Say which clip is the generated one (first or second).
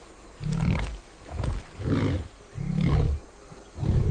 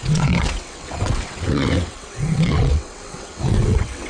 second